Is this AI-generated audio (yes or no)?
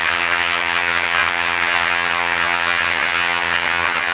yes